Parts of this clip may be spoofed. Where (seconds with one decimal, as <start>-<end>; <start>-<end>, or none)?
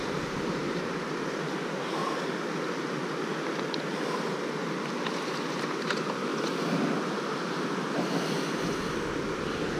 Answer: 0.0-2.0; 5.6-6.3